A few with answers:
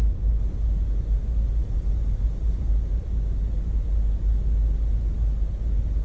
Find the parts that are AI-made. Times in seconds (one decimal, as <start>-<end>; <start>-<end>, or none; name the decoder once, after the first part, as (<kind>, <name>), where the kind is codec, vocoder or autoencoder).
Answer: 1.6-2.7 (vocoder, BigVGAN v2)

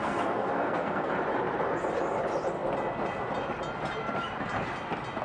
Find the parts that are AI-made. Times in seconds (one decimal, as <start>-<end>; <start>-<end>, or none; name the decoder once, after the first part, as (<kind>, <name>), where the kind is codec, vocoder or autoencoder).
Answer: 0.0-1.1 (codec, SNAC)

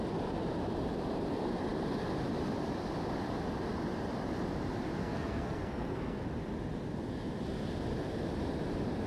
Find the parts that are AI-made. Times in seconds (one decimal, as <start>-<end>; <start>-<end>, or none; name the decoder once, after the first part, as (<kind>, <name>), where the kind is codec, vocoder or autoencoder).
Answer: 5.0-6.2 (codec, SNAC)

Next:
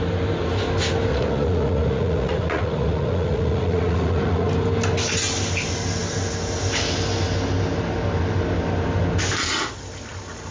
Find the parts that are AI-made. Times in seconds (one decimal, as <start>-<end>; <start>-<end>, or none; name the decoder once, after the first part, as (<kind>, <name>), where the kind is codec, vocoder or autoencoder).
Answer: 1.1-4.5 (vocoder, Vocos)

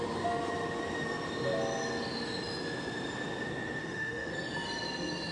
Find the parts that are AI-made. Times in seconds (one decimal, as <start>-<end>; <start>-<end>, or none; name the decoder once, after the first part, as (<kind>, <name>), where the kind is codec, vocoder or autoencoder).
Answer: 3.8-4.3 (autoencoder, DAC-VAE)

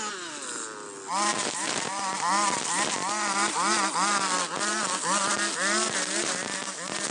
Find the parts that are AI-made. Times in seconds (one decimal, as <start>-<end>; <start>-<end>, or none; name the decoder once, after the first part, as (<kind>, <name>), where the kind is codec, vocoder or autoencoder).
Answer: none